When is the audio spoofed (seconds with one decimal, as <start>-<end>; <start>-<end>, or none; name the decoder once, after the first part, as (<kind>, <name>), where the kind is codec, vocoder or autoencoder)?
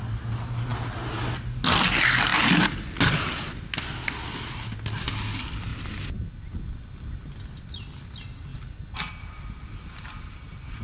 none